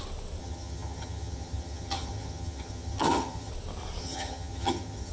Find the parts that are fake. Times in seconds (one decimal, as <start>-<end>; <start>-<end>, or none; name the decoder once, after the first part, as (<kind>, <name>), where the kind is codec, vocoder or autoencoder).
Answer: 0.4-3.5 (vocoder, HiFi-GAN); 4.0-5.1